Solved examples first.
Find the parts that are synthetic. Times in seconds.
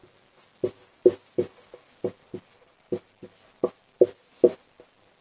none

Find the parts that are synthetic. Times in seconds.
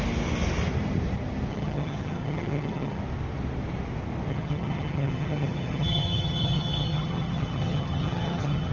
1.5-3.0 (vocoder, HiFi-GAN); 4.3-8.7